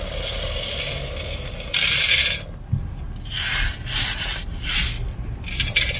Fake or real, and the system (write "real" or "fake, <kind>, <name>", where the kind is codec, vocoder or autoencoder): real